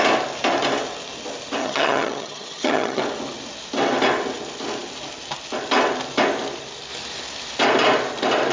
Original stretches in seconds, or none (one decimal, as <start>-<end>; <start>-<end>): 0.0-1.6; 3.0-8.5